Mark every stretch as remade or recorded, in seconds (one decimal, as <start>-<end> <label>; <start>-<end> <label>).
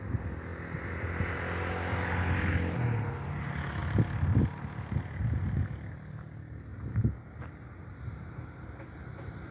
0.0-9.5 recorded